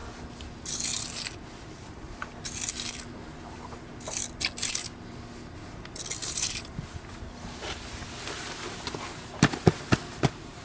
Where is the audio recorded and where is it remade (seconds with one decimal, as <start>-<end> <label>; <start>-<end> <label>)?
0.0-6.2 recorded; 6.2-6.8 remade; 6.8-10.6 recorded